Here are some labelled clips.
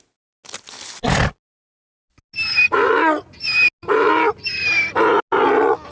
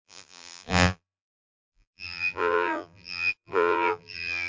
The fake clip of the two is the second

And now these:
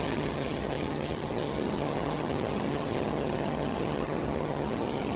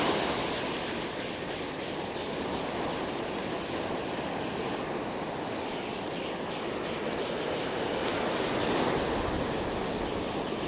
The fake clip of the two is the first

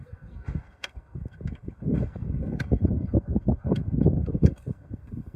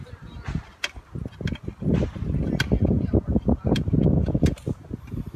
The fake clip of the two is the first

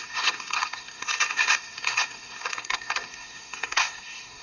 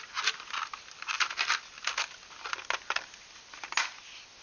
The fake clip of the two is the first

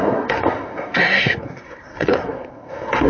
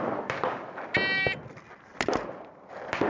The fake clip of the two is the first